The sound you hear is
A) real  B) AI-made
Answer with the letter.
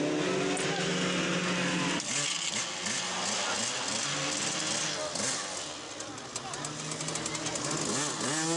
A